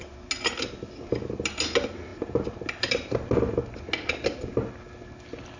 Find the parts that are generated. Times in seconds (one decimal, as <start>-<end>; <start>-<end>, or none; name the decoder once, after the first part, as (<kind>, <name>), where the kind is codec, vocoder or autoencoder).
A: none